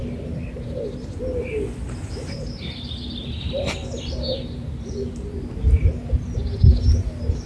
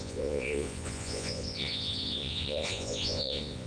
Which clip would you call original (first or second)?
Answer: first